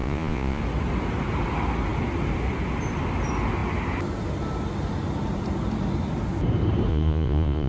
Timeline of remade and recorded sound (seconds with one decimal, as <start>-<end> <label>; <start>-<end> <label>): 0.0-0.6 remade; 0.6-6.9 recorded; 6.9-7.7 remade